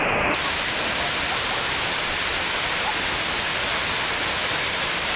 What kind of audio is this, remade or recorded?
recorded